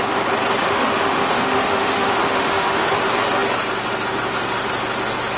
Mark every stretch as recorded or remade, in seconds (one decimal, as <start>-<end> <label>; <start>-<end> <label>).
0.0-0.6 recorded; 0.6-3.0 remade; 3.0-5.4 recorded